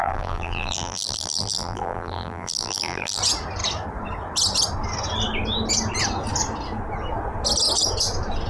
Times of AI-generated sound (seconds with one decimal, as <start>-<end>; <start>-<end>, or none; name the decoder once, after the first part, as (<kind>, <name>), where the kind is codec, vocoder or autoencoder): 0.0-3.2 (vocoder, BigVGAN v2)